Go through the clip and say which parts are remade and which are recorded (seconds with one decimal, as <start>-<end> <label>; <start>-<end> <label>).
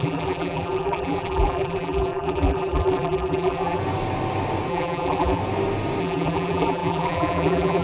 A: 0.0-3.8 remade; 3.8-4.7 recorded; 4.7-5.4 remade; 5.4-6.0 recorded; 6.0-7.8 remade